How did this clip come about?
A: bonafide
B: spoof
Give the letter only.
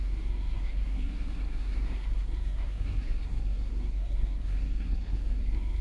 B